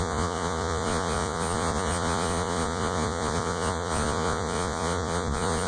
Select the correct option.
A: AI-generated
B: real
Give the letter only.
A